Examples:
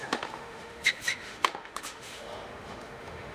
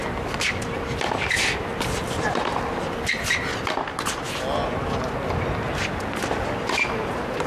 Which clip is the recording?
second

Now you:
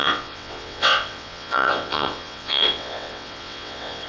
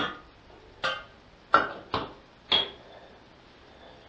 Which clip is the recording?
second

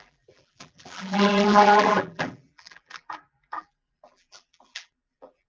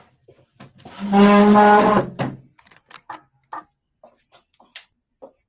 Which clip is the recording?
second